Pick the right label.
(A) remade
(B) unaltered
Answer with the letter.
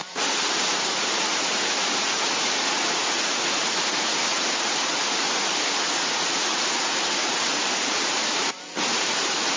A